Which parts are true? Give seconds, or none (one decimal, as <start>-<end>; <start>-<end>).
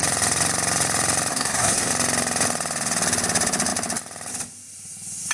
0.0-1.3; 1.9-5.3